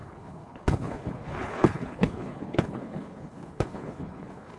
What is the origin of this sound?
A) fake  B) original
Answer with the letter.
A